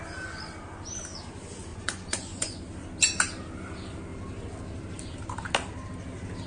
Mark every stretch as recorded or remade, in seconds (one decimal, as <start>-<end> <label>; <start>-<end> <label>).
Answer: 0.0-1.7 recorded; 1.7-2.6 remade; 2.6-6.5 recorded